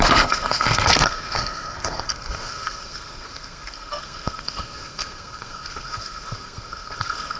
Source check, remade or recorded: remade